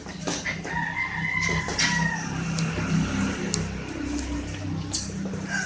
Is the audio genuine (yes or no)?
yes